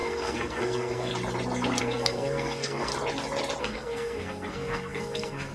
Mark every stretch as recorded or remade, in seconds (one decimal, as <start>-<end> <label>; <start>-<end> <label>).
0.0-1.1 remade; 1.1-1.8 recorded; 1.8-2.9 remade; 2.9-3.6 recorded; 3.6-5.5 remade